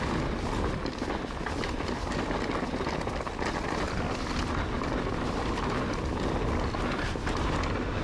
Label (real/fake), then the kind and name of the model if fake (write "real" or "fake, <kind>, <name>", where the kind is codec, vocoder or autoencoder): real